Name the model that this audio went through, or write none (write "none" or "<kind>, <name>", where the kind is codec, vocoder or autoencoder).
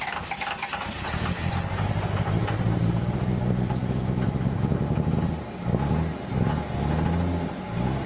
none